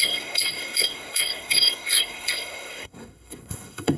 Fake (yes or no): yes